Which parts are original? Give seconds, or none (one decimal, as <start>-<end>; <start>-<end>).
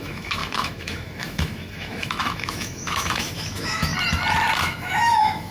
3.9-4.6